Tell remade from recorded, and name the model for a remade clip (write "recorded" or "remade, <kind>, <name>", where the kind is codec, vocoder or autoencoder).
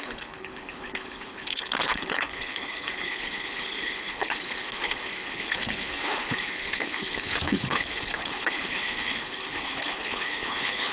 remade, codec, HILCodec